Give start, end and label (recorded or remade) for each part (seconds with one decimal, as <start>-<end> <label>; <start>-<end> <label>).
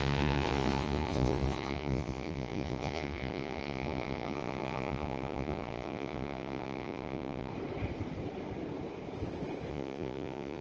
0.0-7.5 remade; 7.5-9.7 recorded; 9.7-10.6 remade